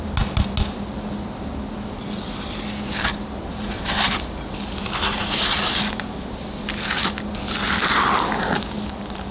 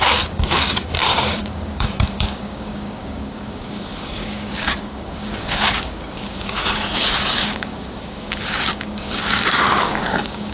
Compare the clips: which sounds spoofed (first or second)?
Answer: second